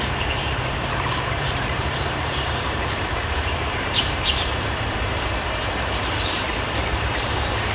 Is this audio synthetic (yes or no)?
yes